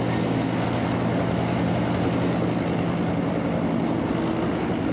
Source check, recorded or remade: recorded